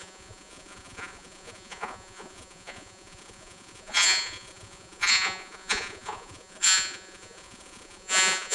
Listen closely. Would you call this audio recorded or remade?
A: remade